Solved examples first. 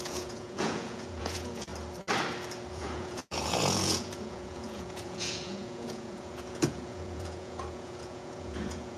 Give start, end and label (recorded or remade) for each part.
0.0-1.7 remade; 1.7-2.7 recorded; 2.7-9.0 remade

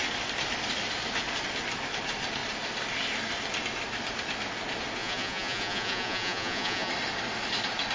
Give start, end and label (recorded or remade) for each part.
0.0-5.0 recorded; 5.0-6.9 remade; 6.9-7.9 recorded

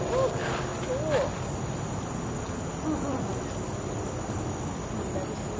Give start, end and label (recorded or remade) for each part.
0.0-5.6 recorded

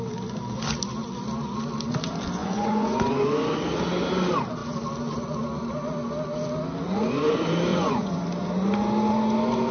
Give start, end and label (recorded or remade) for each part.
0.0-2.4 recorded; 2.4-3.1 remade; 3.1-7.7 recorded; 7.7-8.2 remade; 8.2-9.7 recorded

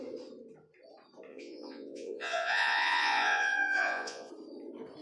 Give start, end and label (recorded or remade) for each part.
0.0-1.3 recorded; 1.3-4.3 remade; 4.3-5.0 recorded

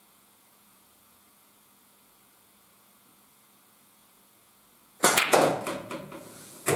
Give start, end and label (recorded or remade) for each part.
0.0-6.8 remade

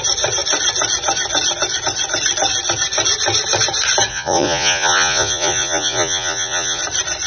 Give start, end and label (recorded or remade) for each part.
0.0-4.1 recorded; 4.1-6.8 remade; 6.8-7.3 recorded